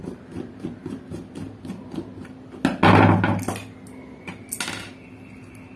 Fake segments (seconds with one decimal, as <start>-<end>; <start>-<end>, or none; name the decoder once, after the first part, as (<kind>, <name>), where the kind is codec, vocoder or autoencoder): none